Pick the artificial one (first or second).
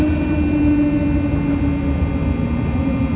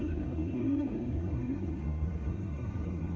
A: second